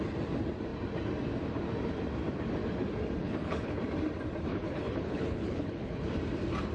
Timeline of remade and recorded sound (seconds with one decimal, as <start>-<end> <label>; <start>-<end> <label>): 0.0-3.2 recorded; 3.2-3.8 remade; 3.8-4.5 recorded; 4.5-6.1 remade; 6.1-6.7 recorded